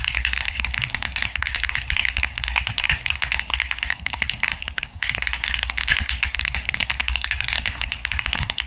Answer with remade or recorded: remade